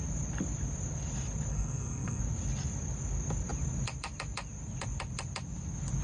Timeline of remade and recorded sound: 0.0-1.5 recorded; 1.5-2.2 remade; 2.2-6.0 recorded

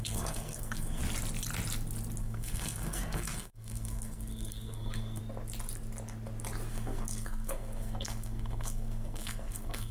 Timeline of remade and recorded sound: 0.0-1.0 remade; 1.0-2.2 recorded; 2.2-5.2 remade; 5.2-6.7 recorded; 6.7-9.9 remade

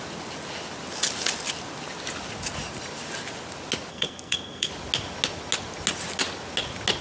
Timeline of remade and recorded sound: 0.0-3.9 recorded; 3.9-4.7 remade; 4.7-7.0 recorded

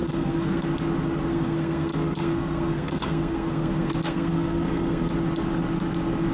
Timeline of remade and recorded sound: 0.0-0.6 remade; 0.6-1.3 recorded; 1.3-5.1 remade; 5.1-6.3 recorded

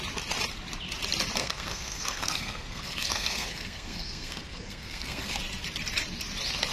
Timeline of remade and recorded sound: 0.0-1.4 recorded; 1.4-5.4 remade; 5.4-6.7 recorded